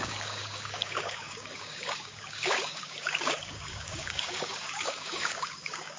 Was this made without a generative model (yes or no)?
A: no